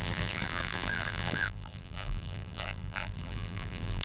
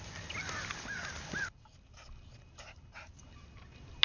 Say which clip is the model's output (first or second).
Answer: first